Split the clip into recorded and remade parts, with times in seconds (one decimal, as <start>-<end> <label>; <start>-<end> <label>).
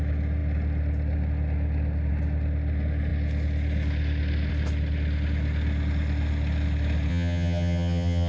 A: 0.0-7.1 recorded; 7.1-8.3 remade